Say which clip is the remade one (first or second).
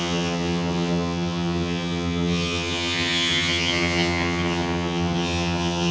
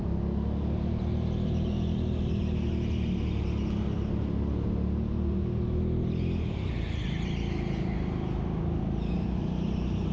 first